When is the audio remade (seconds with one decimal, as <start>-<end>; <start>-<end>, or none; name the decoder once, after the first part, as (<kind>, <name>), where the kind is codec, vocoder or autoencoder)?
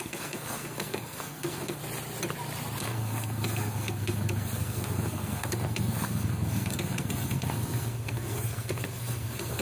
0.0-1.8 (codec, SNAC); 2.8-9.6